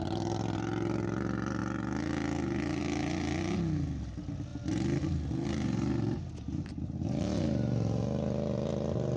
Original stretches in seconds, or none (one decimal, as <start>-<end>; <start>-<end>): 0.0-9.2